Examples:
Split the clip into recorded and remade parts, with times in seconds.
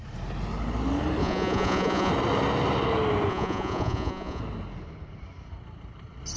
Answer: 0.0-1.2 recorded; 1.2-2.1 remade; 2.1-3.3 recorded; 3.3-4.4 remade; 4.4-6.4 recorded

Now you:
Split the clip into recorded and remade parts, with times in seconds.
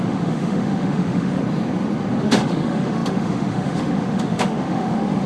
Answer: 0.0-1.4 remade; 1.4-2.2 recorded; 2.2-5.3 remade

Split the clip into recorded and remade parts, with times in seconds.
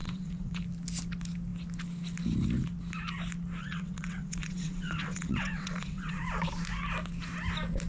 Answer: 0.0-0.6 remade; 0.6-3.6 recorded; 3.6-6.2 remade; 6.2-7.9 recorded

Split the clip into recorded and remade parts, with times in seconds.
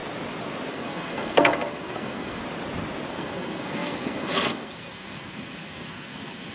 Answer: 0.0-0.7 recorded; 0.7-2.4 remade; 2.4-3.1 recorded; 3.1-6.5 remade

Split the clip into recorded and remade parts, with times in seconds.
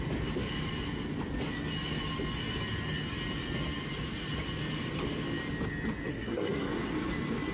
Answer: 0.0-6.1 recorded; 6.1-6.7 remade; 6.7-7.5 recorded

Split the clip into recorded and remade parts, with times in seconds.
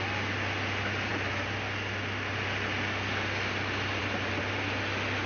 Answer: 0.0-5.3 recorded